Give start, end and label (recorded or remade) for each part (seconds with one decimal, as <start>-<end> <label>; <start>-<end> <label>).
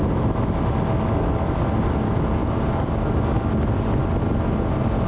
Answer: 0.0-2.4 recorded; 2.4-3.5 remade; 3.5-5.1 recorded